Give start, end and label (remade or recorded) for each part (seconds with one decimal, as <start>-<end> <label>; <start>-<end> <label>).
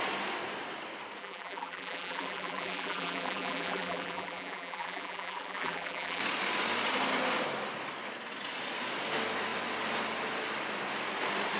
0.0-1.2 recorded; 1.2-6.2 remade; 6.2-11.6 recorded